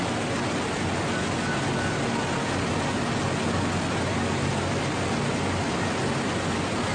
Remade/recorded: recorded